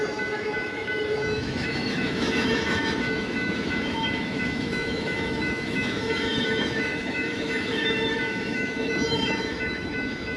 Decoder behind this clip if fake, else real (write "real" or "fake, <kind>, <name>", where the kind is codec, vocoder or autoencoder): fake, autoencoder, DAC-VAE